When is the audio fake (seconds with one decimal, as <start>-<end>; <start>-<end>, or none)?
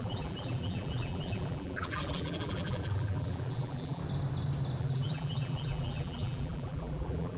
0.0-4.0; 4.8-7.4